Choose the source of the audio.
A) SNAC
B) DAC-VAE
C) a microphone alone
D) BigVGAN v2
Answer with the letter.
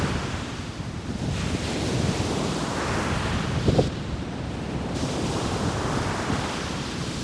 C